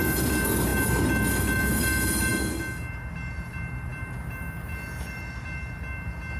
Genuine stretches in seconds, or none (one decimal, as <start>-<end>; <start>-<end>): 0.0-6.4